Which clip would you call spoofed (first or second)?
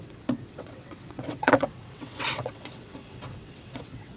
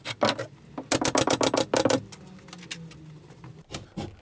first